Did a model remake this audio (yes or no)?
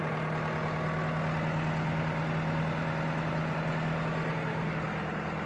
no